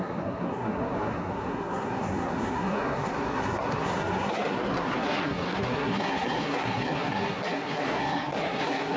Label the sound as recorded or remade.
remade